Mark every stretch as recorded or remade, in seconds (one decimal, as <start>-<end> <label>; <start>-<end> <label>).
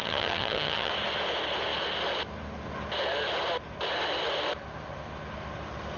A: 0.0-0.9 remade; 0.9-6.0 recorded